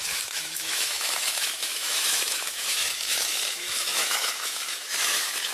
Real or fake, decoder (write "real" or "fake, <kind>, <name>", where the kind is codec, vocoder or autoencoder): fake, autoencoder, DAC-VAE